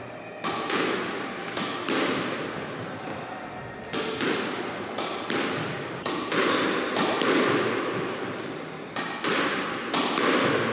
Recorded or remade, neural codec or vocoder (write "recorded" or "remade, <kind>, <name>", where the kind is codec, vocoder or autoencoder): recorded